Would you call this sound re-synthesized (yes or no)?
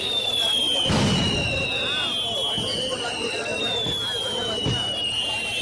no